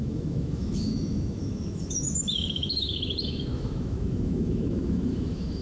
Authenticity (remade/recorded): remade